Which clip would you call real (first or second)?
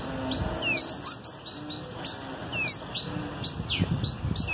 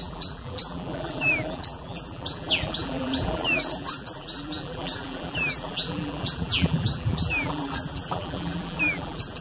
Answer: first